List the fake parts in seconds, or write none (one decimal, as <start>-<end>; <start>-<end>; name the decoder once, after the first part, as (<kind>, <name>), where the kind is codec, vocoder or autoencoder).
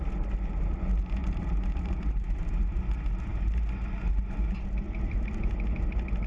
1.2-2.8 (vocoder, BigVGAN v2); 3.3-5.3